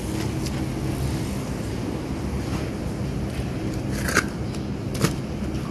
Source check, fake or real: real